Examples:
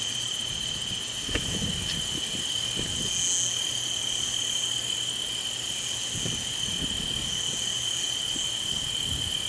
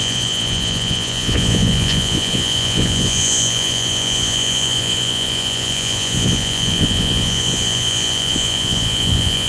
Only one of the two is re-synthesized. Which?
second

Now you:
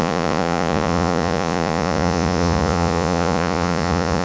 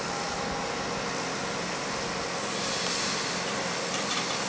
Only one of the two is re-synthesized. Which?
first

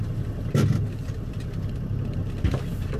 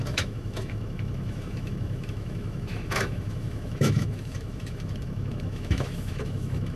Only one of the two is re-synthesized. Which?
second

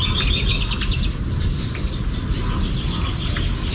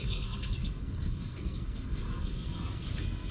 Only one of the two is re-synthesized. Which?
second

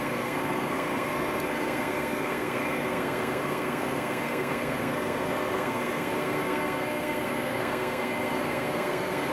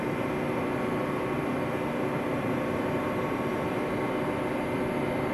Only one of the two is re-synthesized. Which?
first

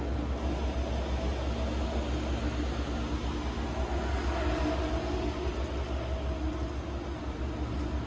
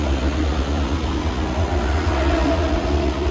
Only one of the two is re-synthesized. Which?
second